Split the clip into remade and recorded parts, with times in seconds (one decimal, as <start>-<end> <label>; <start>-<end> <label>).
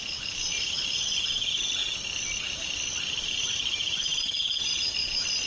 0.0-5.5 recorded